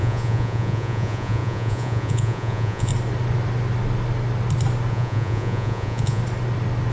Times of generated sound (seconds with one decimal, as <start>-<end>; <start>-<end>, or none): 0.0-2.9; 4.9-6.2